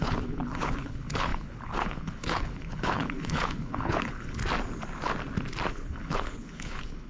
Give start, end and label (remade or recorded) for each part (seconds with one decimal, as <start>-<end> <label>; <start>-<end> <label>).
0.0-4.4 remade; 4.4-5.7 recorded; 5.7-7.1 remade